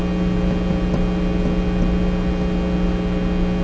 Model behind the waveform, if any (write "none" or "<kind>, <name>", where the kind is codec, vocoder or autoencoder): none